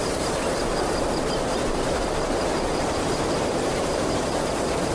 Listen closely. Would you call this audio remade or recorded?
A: remade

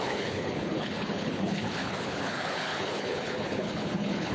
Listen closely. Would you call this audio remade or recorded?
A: remade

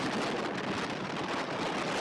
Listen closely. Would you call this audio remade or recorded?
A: recorded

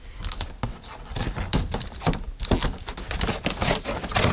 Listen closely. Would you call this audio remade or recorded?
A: recorded